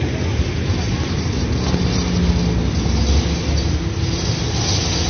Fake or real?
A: real